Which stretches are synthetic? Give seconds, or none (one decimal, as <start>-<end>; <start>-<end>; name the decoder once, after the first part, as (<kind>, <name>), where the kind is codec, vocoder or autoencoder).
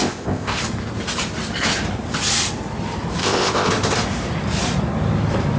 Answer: 0.0-0.6 (codec, ZipCodec); 3.2-3.7